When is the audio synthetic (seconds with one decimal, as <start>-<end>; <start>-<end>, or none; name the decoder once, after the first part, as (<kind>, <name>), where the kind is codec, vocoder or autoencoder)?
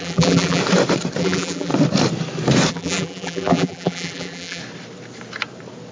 0.0-0.6 (vocoder, BigVGAN v2); 1.2-1.7; 2.7-4.6